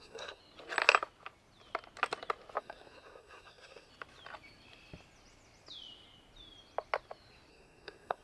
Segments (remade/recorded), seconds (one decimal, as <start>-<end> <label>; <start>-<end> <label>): 0.0-0.4 remade; 0.4-2.6 recorded; 2.6-3.9 remade; 3.9-7.5 recorded; 7.5-8.2 remade

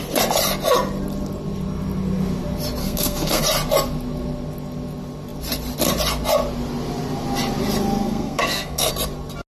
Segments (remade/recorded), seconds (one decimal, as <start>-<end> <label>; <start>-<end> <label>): 0.0-2.8 recorded; 2.8-3.4 remade; 3.4-8.0 recorded; 8.0-8.9 remade; 8.9-9.5 recorded